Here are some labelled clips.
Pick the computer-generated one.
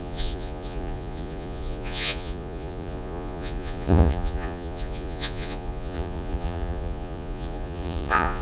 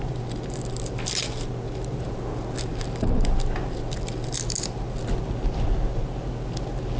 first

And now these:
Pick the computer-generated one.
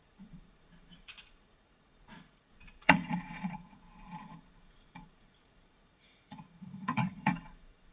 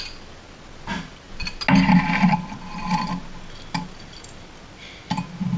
first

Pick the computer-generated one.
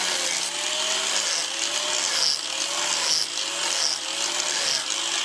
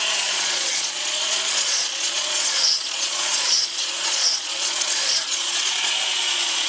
second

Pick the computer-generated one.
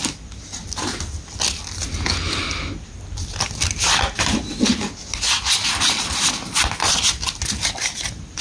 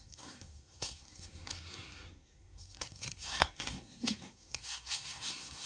second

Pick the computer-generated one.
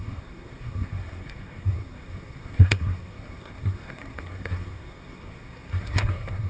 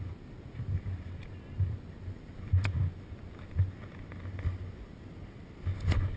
first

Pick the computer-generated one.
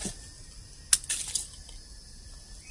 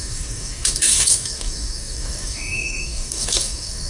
second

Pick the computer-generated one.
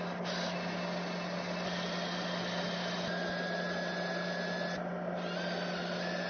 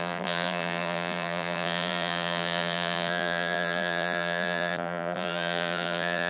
second